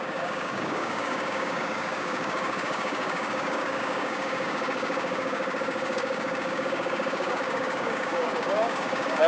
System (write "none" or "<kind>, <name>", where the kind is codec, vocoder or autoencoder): codec, DAC